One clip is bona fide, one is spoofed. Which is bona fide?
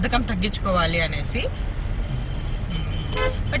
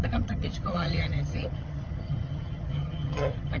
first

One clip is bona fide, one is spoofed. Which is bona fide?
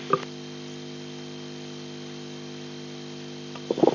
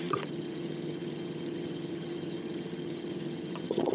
first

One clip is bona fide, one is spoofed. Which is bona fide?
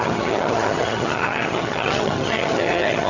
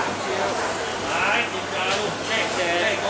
second